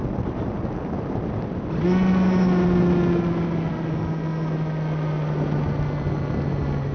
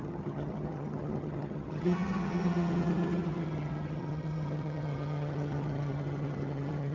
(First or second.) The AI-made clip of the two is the second